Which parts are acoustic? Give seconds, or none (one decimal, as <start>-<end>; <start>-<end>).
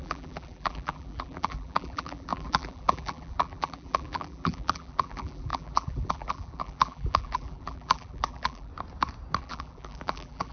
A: 8.7-9.4